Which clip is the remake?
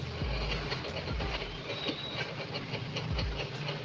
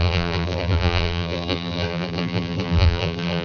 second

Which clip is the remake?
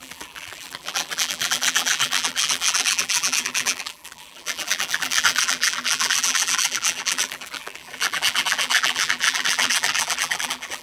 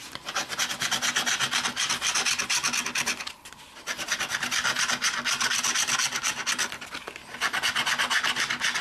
first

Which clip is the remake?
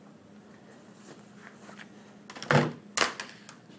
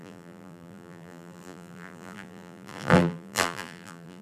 second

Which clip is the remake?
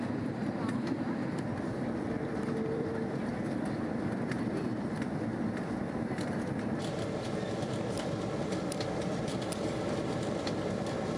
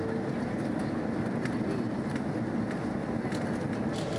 first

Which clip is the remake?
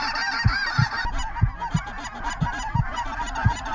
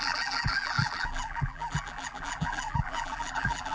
second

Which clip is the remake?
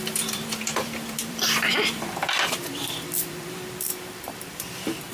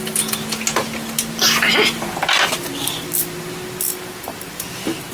first